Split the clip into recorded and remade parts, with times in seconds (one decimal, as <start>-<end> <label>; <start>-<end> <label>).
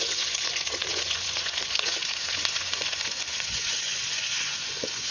0.0-5.1 remade